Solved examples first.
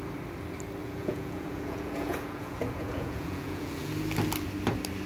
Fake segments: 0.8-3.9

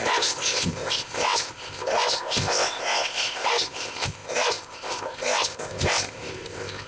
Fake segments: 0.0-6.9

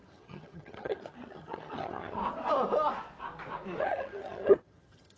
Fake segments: 0.0-2.2; 3.8-5.2